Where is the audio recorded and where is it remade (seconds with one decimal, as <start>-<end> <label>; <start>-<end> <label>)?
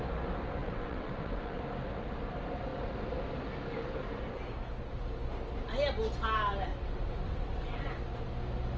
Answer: 0.0-0.6 recorded; 0.6-1.6 remade; 1.6-6.7 recorded; 6.7-7.9 remade; 7.9-8.8 recorded